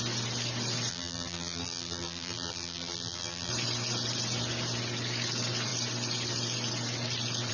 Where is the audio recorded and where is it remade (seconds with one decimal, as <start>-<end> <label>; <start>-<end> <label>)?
0.0-0.9 recorded; 0.9-3.5 remade; 3.5-7.5 recorded